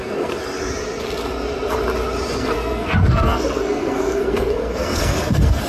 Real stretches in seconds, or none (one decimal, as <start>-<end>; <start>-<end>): 0.4-2.3